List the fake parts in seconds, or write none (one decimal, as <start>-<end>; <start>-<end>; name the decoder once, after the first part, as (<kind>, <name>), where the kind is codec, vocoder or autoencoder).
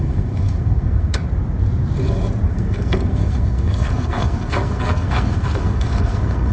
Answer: 0.0-1.2 (codec, SNAC); 2.5-6.5